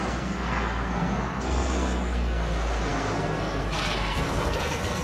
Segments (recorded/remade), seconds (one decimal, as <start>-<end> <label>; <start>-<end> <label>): 0.0-5.0 remade